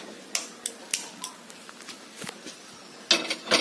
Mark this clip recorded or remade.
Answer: recorded